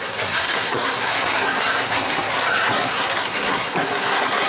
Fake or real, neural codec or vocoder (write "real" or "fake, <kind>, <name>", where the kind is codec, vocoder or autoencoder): fake, codec, SNAC